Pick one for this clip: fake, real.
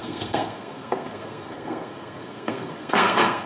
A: fake